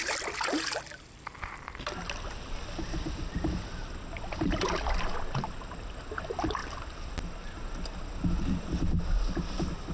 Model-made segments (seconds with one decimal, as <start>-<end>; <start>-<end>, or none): none